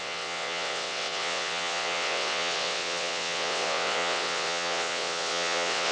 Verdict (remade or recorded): remade